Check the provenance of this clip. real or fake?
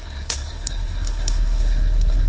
fake